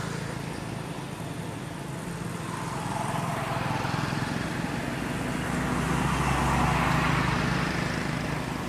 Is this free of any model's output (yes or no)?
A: yes